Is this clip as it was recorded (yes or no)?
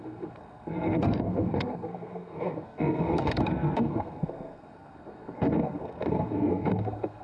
no